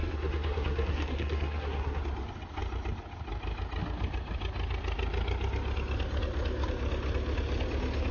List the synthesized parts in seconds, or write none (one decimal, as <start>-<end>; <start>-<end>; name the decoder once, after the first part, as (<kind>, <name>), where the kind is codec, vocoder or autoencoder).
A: 0.0-2.0 (codec, SNAC)